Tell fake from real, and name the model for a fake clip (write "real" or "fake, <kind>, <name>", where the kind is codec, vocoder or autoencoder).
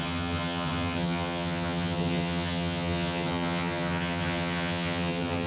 fake, vocoder, HiFi-GAN